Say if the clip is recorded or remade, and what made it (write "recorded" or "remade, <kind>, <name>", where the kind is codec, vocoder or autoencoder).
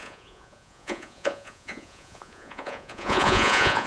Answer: remade, vocoder, Vocos